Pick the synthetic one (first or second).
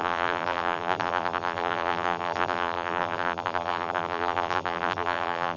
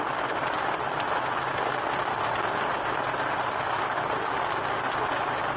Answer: first